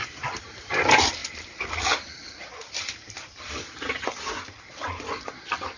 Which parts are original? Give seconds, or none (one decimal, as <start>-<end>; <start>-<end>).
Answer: 0.0-1.2; 4.7-5.8